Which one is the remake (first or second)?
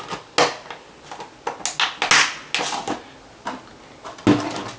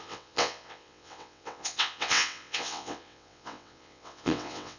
second